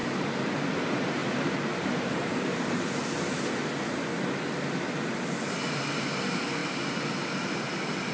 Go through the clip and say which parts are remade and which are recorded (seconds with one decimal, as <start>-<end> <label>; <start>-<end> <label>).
0.0-0.5 remade; 0.5-1.2 recorded; 1.2-2.9 remade; 2.9-6.6 recorded; 6.6-7.3 remade; 7.3-8.1 recorded